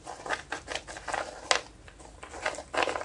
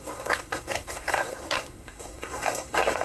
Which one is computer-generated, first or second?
second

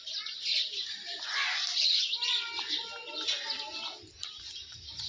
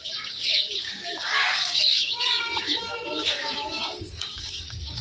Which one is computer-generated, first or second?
second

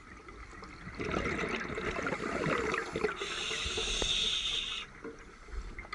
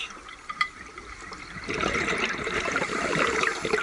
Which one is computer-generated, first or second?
second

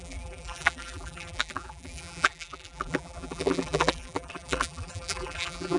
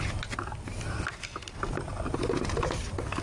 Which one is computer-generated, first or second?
first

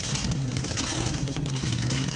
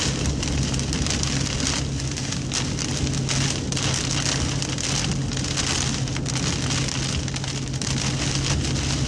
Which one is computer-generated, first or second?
first